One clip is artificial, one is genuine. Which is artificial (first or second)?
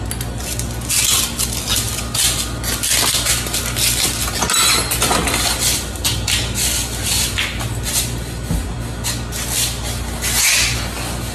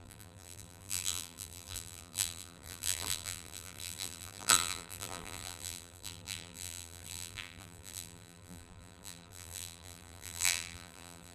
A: second